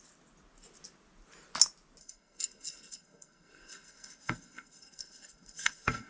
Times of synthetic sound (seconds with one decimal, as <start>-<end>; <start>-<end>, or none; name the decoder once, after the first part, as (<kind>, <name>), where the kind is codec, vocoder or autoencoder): 2.0-6.1 (codec, SNAC)

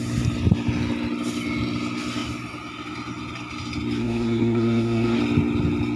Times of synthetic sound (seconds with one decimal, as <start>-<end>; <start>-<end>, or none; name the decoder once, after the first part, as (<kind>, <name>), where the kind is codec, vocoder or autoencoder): 4.0-5.2 (codec, SNAC)

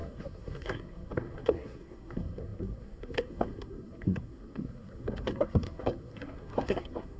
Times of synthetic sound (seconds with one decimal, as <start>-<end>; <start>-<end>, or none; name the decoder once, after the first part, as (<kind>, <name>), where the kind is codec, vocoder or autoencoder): 0.0-7.2 (codec, SNAC)

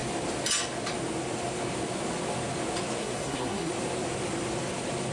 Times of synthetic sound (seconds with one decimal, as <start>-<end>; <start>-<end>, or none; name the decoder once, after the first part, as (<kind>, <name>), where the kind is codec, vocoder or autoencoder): 3.0-3.7 (codec, SNAC)

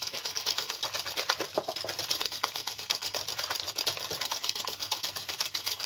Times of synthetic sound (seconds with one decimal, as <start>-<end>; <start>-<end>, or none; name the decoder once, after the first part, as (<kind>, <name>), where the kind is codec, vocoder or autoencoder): 0.0-0.8 (codec, SNAC); 2.2-3.2; 4.2-5.9